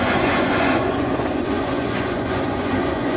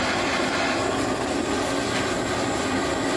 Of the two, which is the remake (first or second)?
first